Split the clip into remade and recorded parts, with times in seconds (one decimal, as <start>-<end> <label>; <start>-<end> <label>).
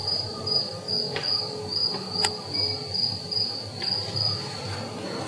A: 0.0-0.6 remade; 0.6-5.3 recorded